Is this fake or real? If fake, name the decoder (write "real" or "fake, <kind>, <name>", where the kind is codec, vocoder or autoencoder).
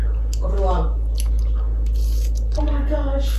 real